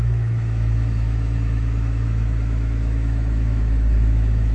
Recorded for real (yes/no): no